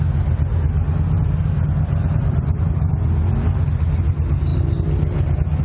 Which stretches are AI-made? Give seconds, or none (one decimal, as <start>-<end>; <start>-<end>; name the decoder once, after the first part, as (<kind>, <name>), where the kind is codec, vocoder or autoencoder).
none